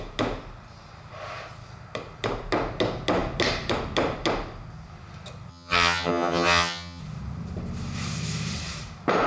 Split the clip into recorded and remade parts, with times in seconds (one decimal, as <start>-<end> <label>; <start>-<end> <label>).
0.0-5.5 recorded; 5.5-7.0 remade; 7.0-9.3 recorded